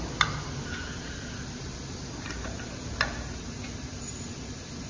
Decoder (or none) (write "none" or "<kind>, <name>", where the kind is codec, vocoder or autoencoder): none